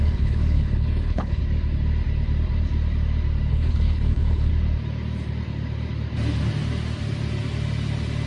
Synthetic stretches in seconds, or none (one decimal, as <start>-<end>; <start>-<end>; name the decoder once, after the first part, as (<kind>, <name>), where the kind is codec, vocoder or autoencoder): 0.0-1.4 (codec, HILCodec); 3.5-4.5